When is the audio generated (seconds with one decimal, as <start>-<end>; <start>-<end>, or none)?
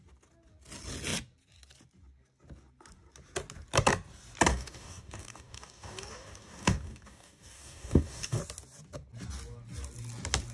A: 4.5-8.4